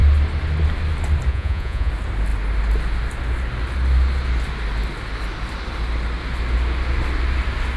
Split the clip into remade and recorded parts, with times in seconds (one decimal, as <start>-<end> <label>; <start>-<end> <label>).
0.0-1.3 recorded; 1.3-1.9 remade; 1.9-7.8 recorded